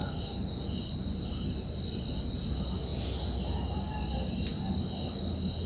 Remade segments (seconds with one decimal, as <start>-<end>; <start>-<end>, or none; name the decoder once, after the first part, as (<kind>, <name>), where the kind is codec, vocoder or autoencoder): none